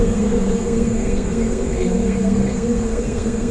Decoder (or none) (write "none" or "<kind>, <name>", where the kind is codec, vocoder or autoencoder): codec, SNAC